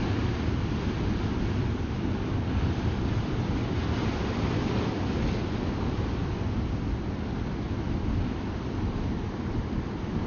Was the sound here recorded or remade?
recorded